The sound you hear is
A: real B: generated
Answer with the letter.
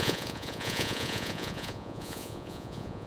B